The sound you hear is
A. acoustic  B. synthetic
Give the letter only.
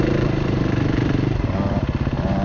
B